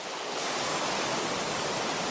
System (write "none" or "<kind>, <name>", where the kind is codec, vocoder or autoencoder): none